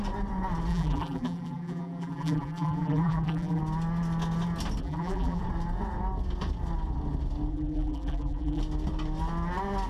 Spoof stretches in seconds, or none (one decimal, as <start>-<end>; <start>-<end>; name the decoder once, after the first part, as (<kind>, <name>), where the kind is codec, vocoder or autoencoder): 0.7-3.6 (vocoder, BigVGAN v2); 4.8-5.4; 7.5-8.6